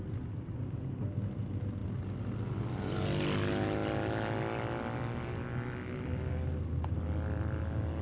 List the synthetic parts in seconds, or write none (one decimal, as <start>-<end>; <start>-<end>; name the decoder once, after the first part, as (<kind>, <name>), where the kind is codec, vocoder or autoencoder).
none